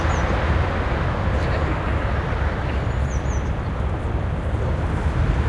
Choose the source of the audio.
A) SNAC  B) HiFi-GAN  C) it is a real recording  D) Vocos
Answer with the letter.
C